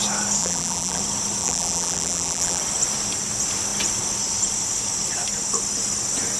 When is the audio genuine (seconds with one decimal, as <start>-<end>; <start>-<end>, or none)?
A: 0.0-0.4; 1.0-1.4; 2.6-6.4